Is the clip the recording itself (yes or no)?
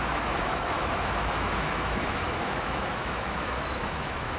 no